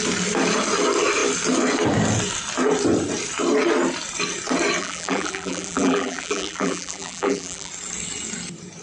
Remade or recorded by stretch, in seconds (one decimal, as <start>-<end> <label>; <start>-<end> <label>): 0.0-4.8 recorded; 4.8-7.7 remade; 7.7-8.8 recorded